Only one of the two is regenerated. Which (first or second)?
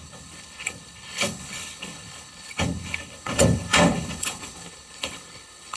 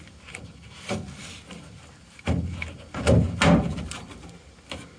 first